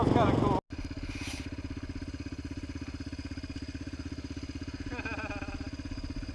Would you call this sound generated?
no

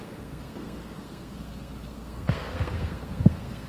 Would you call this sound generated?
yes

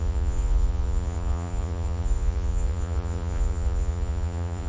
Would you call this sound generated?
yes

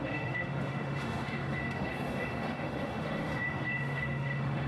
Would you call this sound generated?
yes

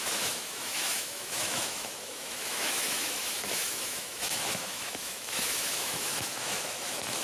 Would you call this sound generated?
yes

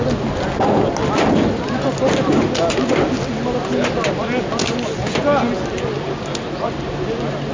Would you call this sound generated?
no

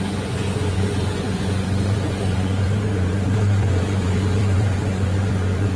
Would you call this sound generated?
yes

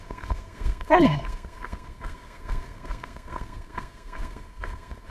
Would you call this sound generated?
yes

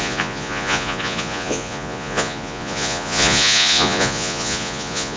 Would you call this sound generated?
yes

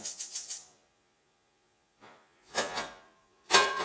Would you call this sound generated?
yes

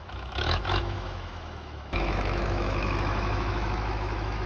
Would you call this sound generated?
yes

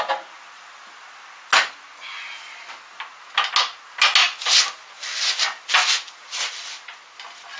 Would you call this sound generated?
no